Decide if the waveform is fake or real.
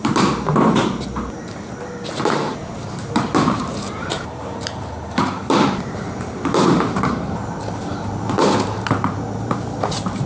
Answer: fake